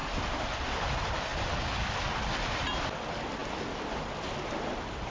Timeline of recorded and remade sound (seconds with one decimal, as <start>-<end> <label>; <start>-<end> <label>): 0.0-5.1 recorded